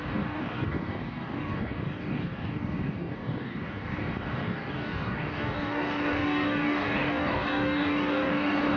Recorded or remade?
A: remade